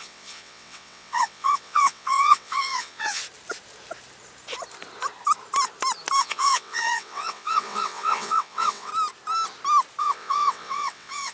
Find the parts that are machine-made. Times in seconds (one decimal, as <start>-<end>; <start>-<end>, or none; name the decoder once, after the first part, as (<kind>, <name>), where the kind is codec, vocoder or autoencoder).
0.0-3.2 (vocoder, WaveNeXt); 6.2-8.9; 10.0-11.3